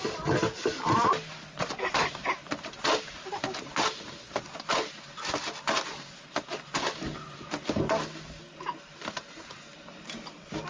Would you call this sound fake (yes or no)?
no